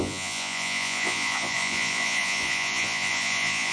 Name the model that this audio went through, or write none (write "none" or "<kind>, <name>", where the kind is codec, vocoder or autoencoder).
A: vocoder, Vocos